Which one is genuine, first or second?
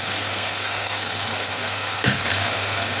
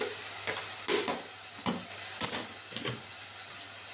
second